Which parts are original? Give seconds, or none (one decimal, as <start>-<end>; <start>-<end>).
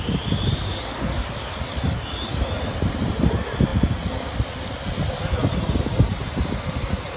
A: 0.0-7.2